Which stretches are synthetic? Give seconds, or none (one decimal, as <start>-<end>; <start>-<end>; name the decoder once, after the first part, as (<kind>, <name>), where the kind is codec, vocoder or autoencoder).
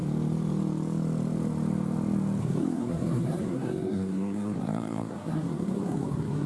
2.4-6.5 (codec, SNAC)